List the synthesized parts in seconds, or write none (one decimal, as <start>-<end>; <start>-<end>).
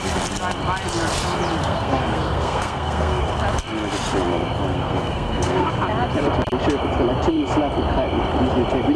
1.6-3.2; 4.7-5.7